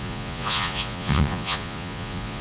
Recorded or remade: remade